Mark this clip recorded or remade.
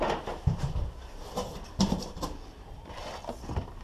recorded